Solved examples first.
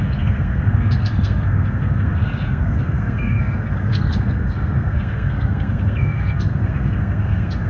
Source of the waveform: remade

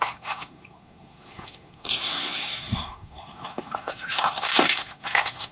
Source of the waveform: remade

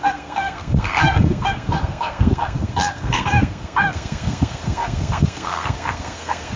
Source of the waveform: remade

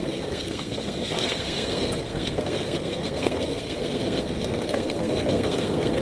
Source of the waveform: remade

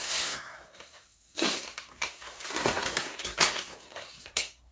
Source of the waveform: remade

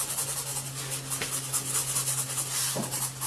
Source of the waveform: recorded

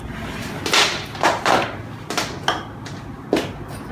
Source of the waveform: recorded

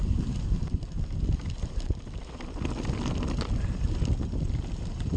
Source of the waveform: recorded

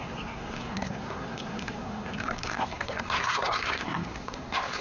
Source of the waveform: remade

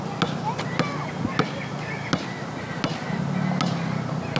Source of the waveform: recorded